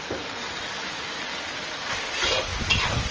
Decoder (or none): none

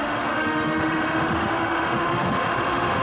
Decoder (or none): autoencoder, DAC-VAE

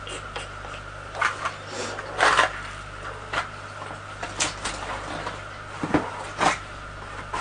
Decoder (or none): none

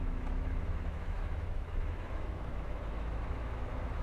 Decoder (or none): autoencoder, DAC-VAE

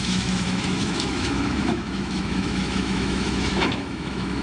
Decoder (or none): autoencoder, DAC-VAE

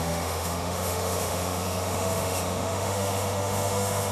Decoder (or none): autoencoder, DAC-VAE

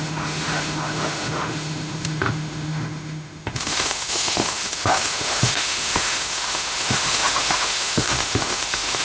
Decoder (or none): autoencoder, DAC-VAE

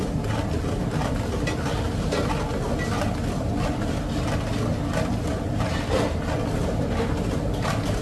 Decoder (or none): none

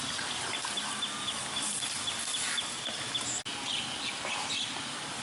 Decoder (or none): none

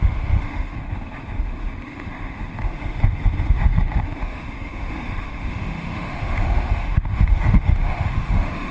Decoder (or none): autoencoder, DAC-VAE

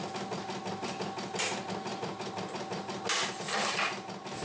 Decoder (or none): none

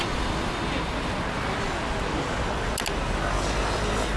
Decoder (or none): none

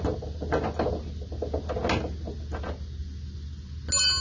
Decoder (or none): none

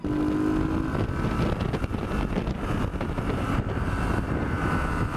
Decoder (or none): none